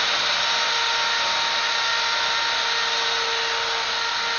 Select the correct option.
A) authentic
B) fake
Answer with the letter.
A